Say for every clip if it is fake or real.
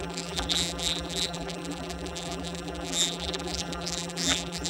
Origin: fake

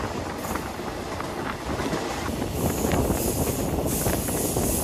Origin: real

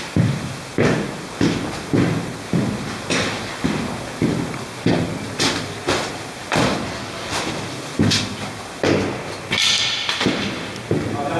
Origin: real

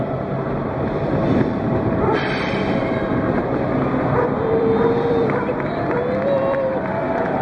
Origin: fake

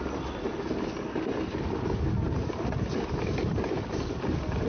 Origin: real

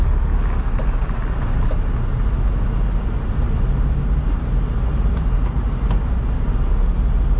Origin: real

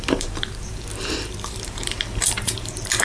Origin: fake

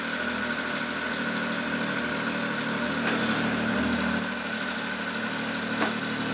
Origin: real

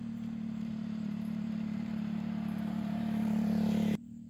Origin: fake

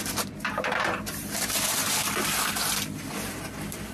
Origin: fake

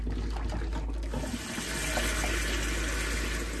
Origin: real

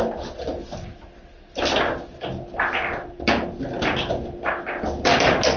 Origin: real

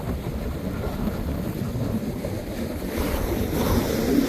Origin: real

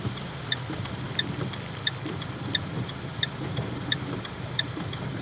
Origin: fake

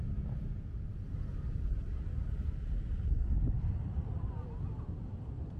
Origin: real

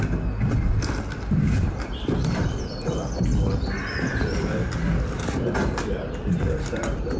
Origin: fake